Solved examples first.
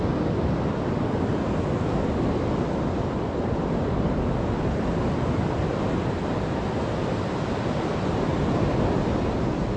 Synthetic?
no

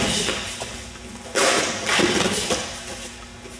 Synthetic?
no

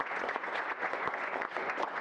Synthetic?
yes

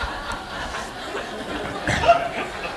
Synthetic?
no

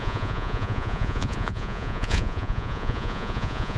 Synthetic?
yes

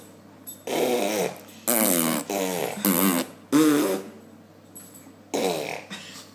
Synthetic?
no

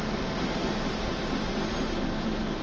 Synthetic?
no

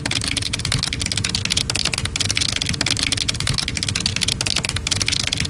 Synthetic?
no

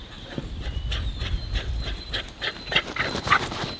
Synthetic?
no